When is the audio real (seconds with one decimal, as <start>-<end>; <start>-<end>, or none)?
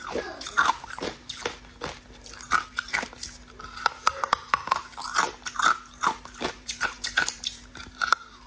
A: 1.4-6.5